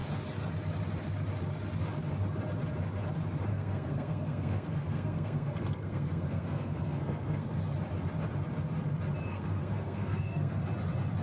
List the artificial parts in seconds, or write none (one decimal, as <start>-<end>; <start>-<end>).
3.5-7.6; 9.3-10.6